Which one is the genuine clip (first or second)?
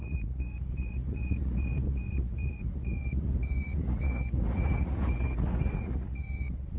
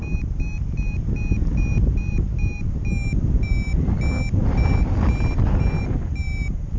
second